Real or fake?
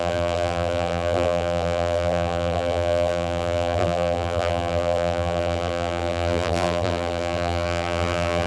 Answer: fake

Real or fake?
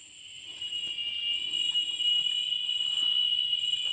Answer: real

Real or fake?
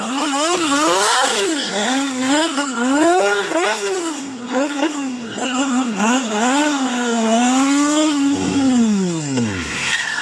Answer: fake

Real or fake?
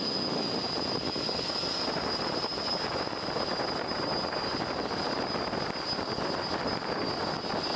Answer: real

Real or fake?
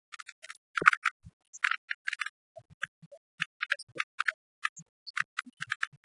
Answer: real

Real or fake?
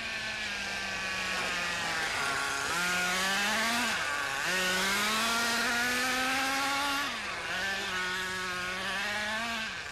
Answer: real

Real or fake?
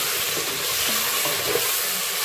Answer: real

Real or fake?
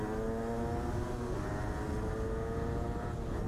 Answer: real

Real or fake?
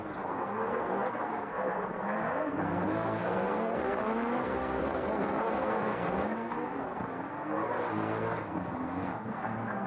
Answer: fake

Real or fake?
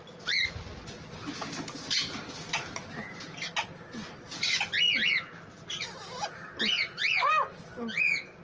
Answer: real